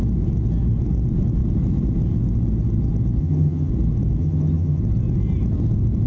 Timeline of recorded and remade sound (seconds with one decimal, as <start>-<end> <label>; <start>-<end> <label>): 0.0-3.2 recorded; 3.2-3.7 remade; 3.7-4.2 recorded; 4.2-4.8 remade; 4.8-6.1 recorded